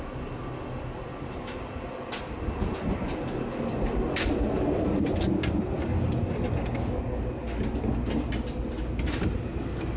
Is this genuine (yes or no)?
yes